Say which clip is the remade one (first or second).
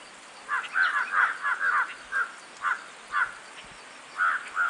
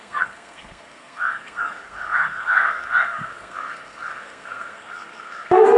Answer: second